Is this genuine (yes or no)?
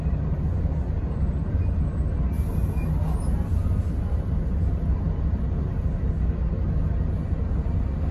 yes